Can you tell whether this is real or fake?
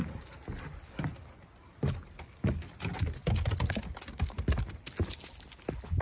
real